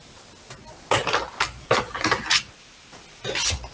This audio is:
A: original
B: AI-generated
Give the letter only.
A